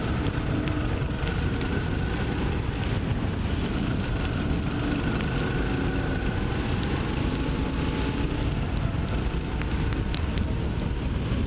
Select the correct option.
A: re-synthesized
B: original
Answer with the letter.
B